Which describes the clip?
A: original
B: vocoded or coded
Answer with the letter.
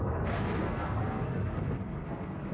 B